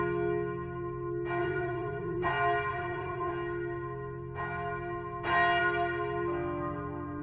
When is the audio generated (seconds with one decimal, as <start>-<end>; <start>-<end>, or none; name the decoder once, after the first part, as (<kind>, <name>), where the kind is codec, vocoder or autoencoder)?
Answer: 1.4-2.3 (vocoder, Vocos); 2.7-3.3